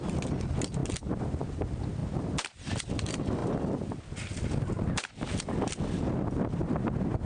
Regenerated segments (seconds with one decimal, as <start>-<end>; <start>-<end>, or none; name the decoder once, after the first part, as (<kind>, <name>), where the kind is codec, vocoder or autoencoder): none